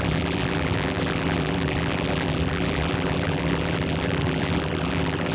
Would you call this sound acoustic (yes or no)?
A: no